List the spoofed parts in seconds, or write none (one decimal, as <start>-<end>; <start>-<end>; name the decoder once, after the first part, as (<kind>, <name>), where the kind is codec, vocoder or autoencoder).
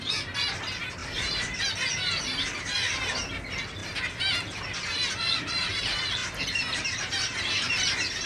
1.0-1.7 (vocoder, BigVGAN v2); 6.2-7.1